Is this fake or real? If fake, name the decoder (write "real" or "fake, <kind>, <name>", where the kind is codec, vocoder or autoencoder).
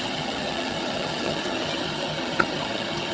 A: fake, vocoder, HiFi-GAN